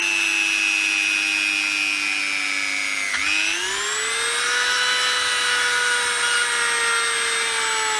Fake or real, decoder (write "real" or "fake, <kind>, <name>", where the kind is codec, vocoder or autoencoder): real